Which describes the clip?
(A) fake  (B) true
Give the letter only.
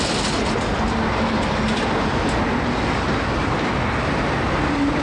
B